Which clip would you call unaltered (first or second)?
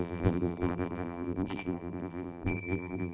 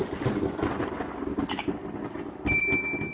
second